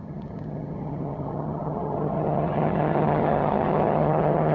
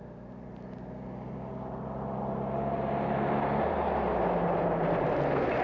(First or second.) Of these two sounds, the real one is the second